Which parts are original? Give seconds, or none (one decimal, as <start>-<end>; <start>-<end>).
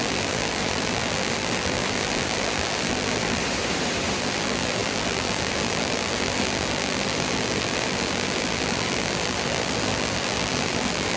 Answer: 3.4-4.2